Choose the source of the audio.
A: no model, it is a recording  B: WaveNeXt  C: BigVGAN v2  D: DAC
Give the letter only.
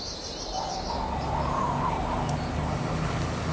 A